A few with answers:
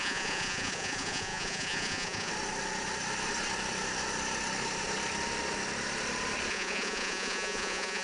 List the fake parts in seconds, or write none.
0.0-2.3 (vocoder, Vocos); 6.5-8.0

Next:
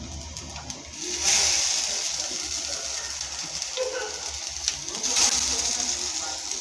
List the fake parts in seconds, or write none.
none

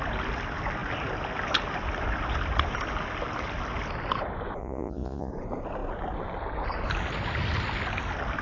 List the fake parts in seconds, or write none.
4.6-5.3 (vocoder, Vocos)

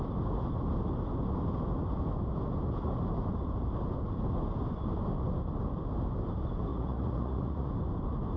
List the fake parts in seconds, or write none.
6.7-7.7 (vocoder, Vocos)

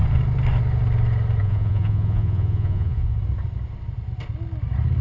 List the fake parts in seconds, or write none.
1.4-3.2 (vocoder, Vocos)